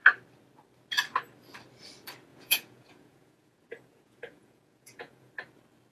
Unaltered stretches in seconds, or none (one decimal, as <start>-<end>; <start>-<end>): 0.0-2.3; 5.3-5.9